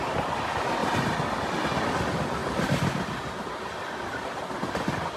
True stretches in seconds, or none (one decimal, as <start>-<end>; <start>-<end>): 0.0-0.8; 1.4-2.4; 3.1-5.2